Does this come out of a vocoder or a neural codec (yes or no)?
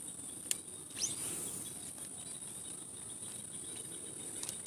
no